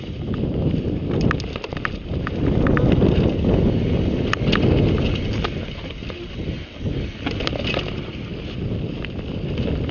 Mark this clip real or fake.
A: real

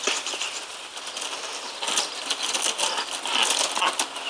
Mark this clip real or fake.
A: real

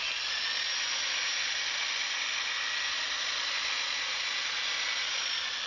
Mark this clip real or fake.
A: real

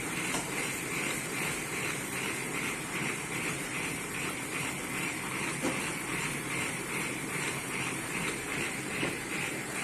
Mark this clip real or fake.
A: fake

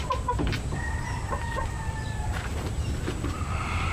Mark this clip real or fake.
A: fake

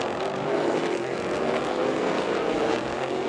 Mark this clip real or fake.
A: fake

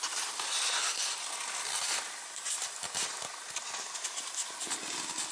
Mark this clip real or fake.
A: real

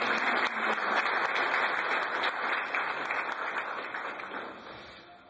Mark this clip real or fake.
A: real